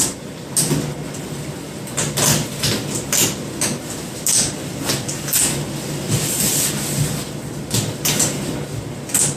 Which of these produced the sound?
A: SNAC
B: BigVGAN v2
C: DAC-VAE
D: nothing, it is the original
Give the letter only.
D